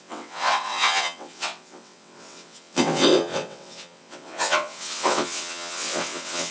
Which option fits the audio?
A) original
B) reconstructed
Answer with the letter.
B